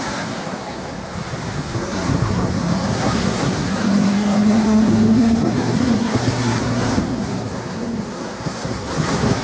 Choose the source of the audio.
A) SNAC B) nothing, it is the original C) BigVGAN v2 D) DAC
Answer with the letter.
A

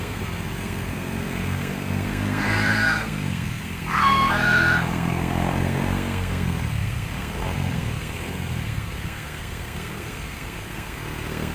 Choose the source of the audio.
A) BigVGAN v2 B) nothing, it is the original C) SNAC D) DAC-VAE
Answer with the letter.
C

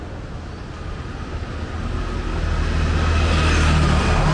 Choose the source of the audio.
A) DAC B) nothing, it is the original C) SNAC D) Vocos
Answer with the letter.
B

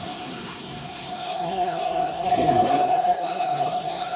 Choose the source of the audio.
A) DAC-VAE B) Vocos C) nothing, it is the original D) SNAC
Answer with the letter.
D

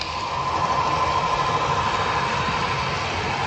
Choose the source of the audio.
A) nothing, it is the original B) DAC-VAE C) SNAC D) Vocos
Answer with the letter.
A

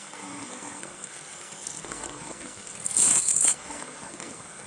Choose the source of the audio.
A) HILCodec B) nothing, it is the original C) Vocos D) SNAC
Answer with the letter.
D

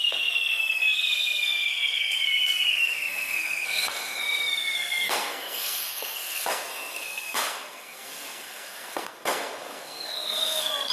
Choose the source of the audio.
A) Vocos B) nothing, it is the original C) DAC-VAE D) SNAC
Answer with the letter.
D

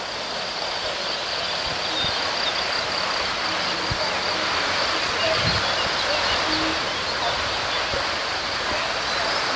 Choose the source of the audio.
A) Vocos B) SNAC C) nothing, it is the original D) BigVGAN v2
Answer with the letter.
C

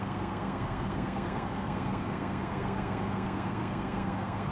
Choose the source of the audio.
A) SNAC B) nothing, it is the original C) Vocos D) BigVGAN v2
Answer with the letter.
A